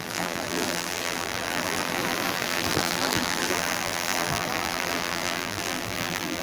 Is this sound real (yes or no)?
no